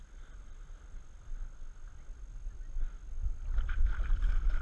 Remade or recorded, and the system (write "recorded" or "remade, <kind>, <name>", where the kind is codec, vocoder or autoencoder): recorded